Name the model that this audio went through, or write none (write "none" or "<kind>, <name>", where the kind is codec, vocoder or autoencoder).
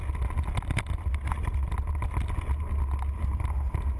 none